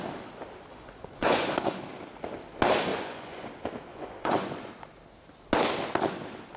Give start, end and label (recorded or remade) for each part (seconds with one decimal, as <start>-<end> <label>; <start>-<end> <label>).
0.0-0.7 recorded; 0.7-1.8 remade; 1.8-2.9 recorded; 2.9-3.5 remade; 3.5-3.9 recorded; 3.9-4.7 remade; 4.7-6.6 recorded